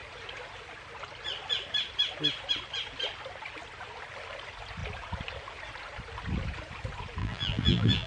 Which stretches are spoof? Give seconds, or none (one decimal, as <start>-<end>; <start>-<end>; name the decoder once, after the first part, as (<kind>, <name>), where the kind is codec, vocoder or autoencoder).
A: 7.2-8.1 (vocoder, BigVGAN v2)